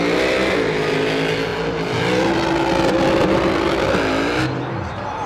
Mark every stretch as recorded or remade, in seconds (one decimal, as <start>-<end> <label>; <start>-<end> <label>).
0.0-5.3 recorded